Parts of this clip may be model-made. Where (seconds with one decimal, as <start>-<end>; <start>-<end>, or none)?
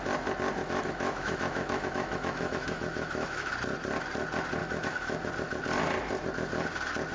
0.6-3.5; 4.6-5.3